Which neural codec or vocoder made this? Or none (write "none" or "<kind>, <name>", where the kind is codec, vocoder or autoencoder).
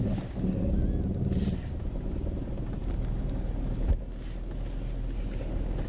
none